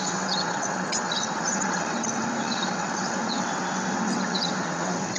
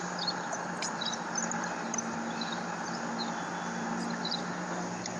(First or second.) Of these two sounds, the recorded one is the second